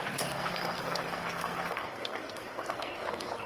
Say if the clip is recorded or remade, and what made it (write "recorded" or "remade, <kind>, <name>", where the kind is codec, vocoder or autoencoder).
remade, codec, SNAC